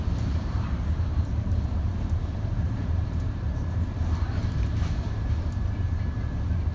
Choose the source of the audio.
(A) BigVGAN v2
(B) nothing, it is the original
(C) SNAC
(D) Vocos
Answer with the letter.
A